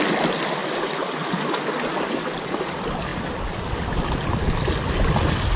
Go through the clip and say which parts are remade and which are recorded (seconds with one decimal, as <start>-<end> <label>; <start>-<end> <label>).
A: 0.0-5.6 recorded

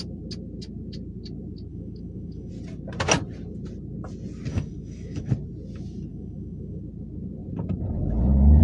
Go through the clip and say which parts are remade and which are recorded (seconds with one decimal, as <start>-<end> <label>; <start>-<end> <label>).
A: 0.0-1.7 recorded; 1.7-2.5 remade; 2.5-4.5 recorded; 4.5-5.3 remade; 5.3-6.1 recorded; 6.1-6.8 remade; 6.8-8.6 recorded

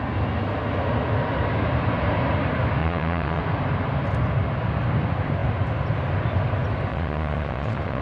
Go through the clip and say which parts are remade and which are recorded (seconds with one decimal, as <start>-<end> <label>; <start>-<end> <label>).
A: 0.0-2.8 recorded; 2.8-3.4 remade; 3.4-6.9 recorded; 6.9-8.0 remade

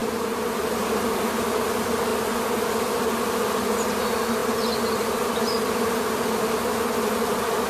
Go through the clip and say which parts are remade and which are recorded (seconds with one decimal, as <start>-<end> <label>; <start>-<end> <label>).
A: 0.0-0.6 remade; 0.6-7.7 recorded

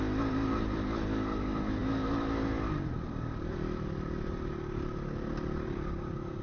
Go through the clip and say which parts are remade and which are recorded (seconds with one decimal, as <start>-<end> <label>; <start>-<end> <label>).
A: 0.0-6.4 recorded

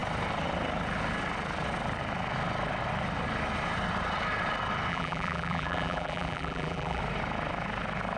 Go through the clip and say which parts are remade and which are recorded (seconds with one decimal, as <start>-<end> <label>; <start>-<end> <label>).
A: 0.0-4.9 recorded; 4.9-7.0 remade; 7.0-8.2 recorded